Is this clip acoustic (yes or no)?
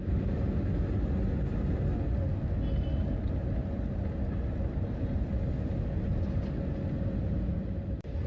yes